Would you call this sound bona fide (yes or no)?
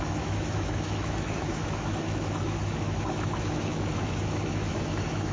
no